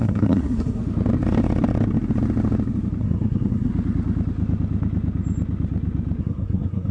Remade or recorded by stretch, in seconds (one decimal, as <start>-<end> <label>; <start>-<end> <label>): 0.0-0.8 remade; 0.8-3.0 recorded; 3.0-3.7 remade; 3.7-6.2 recorded; 6.2-6.9 remade